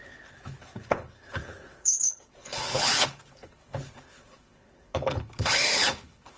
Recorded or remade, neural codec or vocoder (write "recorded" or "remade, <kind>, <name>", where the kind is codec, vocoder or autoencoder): remade, codec, HILCodec